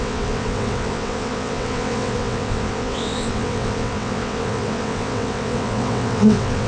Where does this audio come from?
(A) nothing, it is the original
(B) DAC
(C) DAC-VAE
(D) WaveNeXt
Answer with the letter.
D